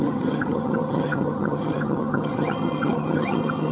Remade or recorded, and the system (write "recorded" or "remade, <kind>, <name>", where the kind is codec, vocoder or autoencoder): remade, vocoder, HiFi-GAN